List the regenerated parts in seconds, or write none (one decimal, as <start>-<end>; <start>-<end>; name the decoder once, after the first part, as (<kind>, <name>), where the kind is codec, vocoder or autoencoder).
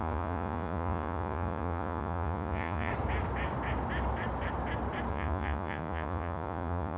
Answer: 0.0-2.9 (vocoder, Vocos); 5.1-7.0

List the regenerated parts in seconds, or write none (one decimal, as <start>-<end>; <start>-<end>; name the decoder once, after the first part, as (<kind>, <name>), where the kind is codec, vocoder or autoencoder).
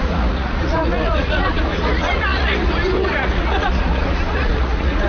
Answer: 0.0-5.1 (vocoder, Vocos)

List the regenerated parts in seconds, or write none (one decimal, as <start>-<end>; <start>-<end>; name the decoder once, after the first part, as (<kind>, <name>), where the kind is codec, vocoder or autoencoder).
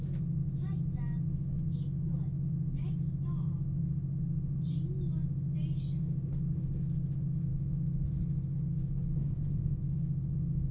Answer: 9.2-9.8 (vocoder, Vocos)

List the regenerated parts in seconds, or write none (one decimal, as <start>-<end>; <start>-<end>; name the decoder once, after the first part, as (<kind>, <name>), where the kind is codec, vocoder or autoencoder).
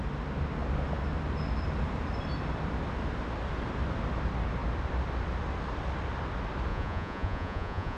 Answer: 6.7-8.0 (vocoder, Vocos)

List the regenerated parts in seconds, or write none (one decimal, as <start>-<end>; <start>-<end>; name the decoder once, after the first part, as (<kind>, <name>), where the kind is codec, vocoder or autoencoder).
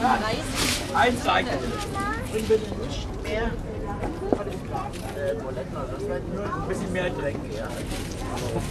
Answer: none